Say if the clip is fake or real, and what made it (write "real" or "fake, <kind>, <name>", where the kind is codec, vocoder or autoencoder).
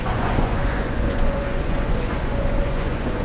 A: fake, vocoder, Vocos